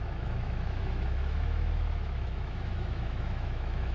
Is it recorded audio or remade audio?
remade